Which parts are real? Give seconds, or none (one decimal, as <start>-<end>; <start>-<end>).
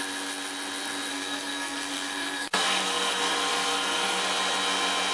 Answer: 0.0-1.1; 4.2-5.1